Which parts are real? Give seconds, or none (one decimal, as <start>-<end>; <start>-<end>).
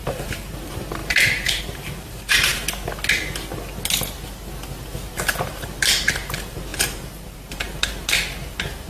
2.5-5.5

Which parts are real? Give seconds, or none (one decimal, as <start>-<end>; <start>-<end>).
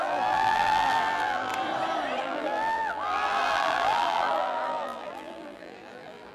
1.5-2.2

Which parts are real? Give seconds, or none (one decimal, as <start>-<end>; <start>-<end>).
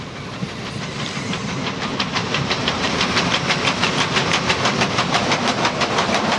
0.0-2.2; 4.6-6.4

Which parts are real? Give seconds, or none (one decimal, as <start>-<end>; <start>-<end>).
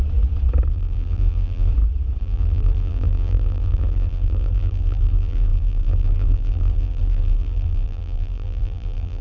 0.0-0.7; 1.7-2.2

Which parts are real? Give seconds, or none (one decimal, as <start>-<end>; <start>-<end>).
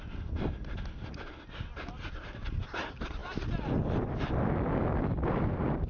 0.0-5.9